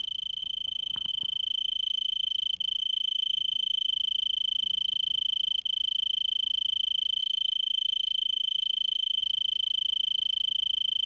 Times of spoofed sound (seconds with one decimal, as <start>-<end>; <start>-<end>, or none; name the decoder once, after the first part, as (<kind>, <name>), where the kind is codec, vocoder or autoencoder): 0.4-1.1 (autoencoder, DAC-VAE); 1.6-2.3; 2.8-3.9; 7.2-9.2